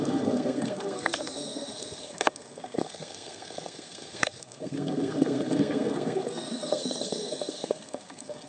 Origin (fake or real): fake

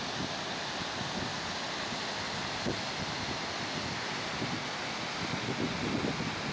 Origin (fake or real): real